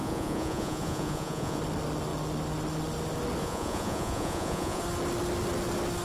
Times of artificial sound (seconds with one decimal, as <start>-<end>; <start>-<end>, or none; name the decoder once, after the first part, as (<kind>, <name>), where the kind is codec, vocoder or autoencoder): 0.0-1.6 (vocoder, Vocos); 3.4-4.8